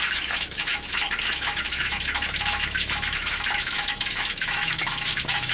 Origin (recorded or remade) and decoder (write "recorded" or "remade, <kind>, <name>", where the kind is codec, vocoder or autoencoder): remade, autoencoder, DAC-VAE